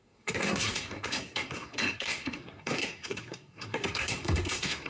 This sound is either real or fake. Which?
fake